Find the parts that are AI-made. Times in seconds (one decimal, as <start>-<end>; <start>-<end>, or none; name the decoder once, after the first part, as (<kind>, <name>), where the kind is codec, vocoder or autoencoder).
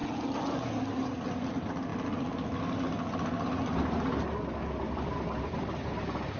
none